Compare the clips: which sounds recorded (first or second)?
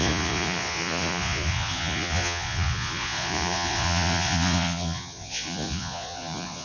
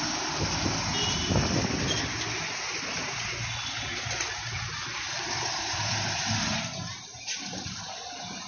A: second